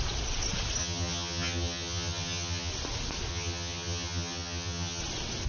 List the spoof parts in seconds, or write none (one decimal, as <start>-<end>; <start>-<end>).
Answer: 0.8-2.7; 3.3-5.0